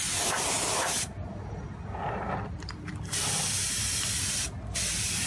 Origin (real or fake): real